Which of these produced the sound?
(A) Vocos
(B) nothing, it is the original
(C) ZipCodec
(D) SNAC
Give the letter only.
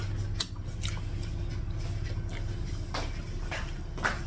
B